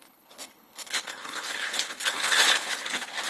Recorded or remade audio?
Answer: remade